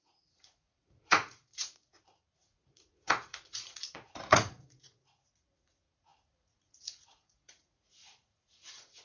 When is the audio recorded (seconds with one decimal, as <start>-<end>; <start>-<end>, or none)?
none